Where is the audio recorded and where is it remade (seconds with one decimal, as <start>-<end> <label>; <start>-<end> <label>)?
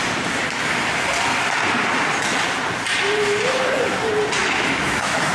0.0-4.4 recorded; 4.4-5.3 remade